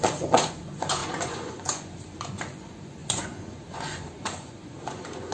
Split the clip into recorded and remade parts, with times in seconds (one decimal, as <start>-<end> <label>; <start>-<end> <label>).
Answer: 0.0-5.3 remade